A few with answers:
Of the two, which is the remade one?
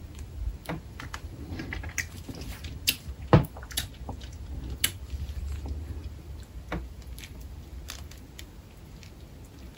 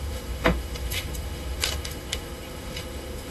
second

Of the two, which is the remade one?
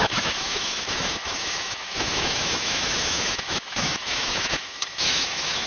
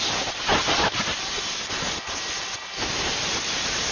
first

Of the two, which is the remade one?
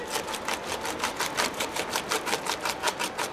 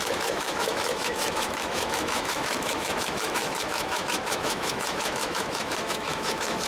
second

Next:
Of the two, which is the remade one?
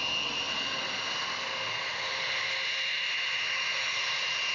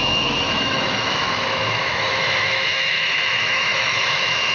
second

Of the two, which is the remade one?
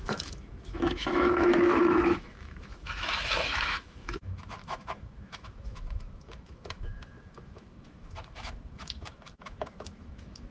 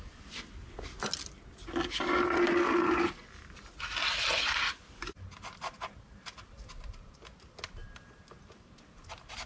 first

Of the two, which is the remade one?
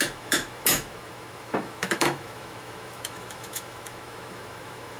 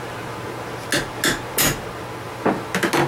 first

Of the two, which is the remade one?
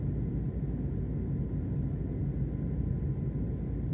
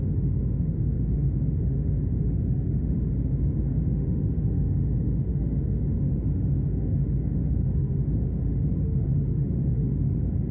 second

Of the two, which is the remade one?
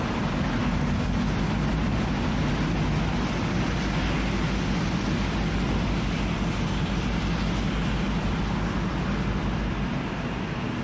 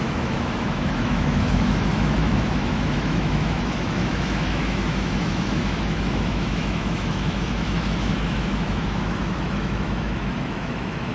second